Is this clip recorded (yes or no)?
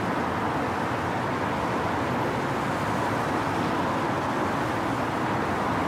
yes